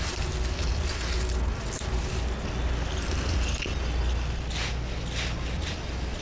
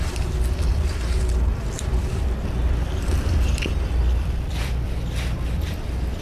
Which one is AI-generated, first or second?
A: second